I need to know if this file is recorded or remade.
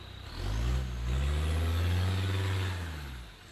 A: recorded